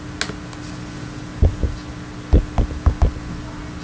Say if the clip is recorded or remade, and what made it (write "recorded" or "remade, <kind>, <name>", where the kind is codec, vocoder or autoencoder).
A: recorded